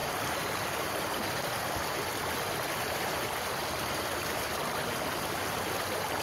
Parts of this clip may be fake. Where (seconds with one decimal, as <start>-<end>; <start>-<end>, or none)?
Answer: 0.0-1.2